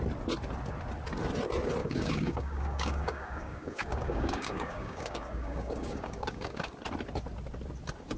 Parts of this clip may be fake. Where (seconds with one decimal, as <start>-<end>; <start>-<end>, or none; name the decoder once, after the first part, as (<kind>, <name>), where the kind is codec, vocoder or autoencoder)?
1.8-6.7 (codec, DAC)